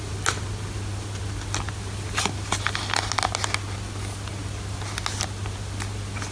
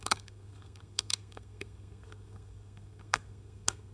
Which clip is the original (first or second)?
first